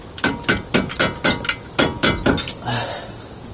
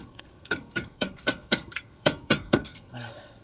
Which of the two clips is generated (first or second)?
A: second